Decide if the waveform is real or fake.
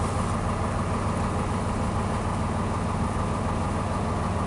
real